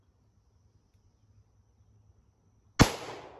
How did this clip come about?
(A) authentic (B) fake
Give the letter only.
A